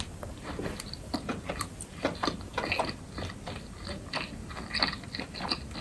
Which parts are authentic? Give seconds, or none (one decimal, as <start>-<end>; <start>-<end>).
0.0-5.8